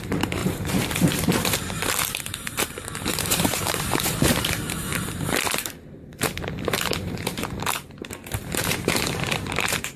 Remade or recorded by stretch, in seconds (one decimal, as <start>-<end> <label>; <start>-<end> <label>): 0.0-4.9 remade; 4.9-8.6 recorded; 8.6-10.0 remade

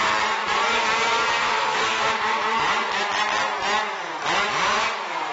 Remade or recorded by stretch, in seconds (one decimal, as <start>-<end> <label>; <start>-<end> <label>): 0.0-0.4 recorded; 0.4-2.7 remade; 2.7-3.4 recorded; 3.4-4.2 remade; 4.2-5.3 recorded

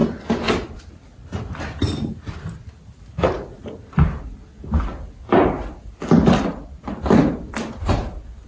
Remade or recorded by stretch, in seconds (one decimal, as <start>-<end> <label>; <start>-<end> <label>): 0.0-0.8 remade; 0.8-6.2 recorded; 6.2-7.6 remade; 7.6-8.5 recorded

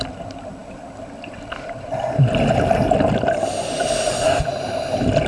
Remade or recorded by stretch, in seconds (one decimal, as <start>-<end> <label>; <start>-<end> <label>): 0.0-5.3 recorded

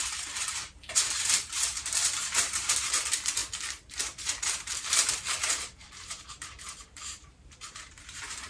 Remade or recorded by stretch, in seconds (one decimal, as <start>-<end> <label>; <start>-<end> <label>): 0.0-8.5 remade

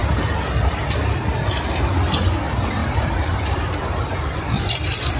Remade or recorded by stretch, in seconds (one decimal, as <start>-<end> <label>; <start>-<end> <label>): 0.0-2.4 recorded; 2.4-5.2 remade